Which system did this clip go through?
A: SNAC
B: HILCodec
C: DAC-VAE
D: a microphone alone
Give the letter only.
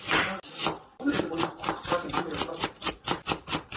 D